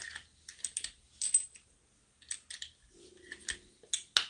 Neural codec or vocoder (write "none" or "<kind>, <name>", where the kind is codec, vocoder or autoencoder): none